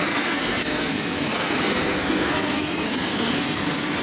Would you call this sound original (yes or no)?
no